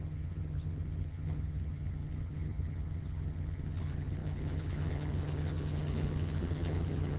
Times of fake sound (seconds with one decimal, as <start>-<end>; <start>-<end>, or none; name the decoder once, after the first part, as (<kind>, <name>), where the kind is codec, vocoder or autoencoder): 0.0-7.2 (vocoder, HiFi-GAN)

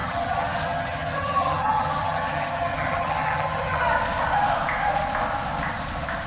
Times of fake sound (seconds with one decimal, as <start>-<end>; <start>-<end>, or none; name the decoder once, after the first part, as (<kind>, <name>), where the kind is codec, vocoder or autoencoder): 0.0-3.8 (vocoder, HiFi-GAN)